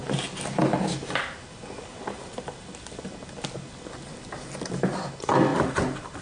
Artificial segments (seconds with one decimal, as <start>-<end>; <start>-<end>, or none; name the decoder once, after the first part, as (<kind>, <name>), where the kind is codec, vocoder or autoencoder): none